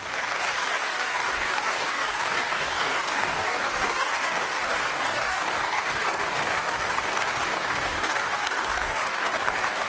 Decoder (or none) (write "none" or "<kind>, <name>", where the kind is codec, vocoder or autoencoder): codec, DAC